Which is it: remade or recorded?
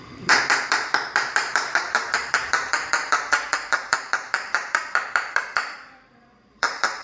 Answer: remade